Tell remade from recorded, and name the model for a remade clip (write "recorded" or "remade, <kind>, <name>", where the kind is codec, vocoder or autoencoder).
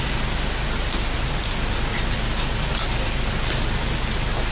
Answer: recorded